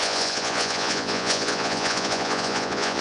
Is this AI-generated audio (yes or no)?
yes